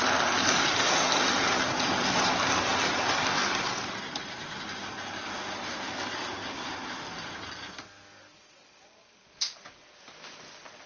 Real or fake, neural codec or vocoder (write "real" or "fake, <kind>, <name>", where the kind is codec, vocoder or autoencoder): real